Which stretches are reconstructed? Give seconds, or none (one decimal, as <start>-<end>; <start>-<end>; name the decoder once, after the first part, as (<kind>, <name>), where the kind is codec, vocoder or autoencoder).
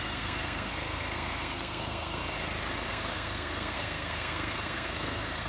0.0-2.2 (codec, SNAC); 2.9-5.5